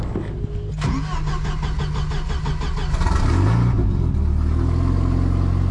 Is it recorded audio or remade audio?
recorded